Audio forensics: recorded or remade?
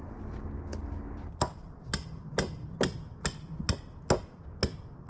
recorded